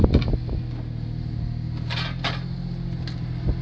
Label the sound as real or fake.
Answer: real